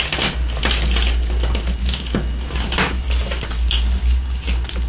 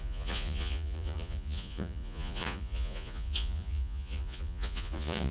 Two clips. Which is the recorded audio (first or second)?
first